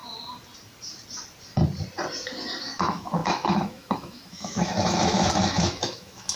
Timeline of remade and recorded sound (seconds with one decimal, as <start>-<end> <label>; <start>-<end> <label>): 0.0-2.6 recorded; 2.6-6.4 remade